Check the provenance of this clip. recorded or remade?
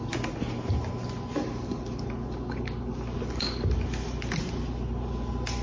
recorded